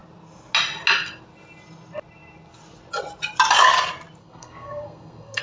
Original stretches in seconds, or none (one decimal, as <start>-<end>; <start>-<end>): 0.0-4.2